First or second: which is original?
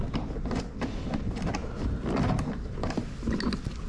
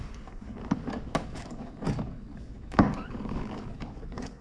first